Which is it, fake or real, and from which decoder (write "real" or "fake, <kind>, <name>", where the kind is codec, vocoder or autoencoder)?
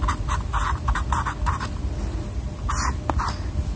real